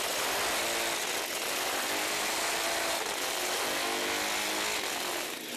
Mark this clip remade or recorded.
recorded